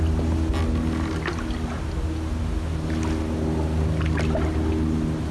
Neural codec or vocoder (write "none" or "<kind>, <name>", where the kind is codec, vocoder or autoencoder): none